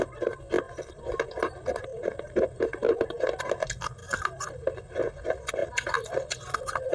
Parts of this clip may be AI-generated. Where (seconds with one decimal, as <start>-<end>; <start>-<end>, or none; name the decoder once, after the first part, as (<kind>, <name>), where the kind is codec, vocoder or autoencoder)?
1.9-3.4 (vocoder, BigVGAN v2); 4.0-4.5